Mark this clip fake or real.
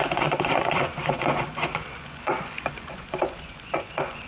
fake